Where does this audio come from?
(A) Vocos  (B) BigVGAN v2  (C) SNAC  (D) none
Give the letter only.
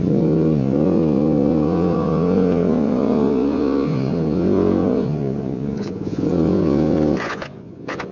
A